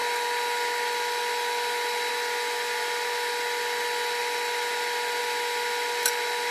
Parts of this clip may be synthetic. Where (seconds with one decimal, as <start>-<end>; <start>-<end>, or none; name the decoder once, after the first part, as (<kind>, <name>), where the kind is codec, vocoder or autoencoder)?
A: none